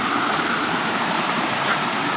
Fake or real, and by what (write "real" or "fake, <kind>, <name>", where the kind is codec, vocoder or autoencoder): real